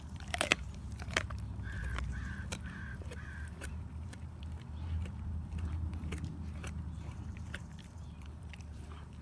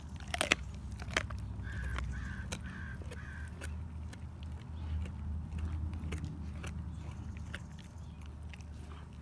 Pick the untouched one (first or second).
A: second